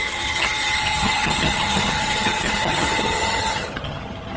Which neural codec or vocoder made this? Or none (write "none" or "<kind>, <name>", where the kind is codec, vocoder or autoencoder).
vocoder, HiFi-GAN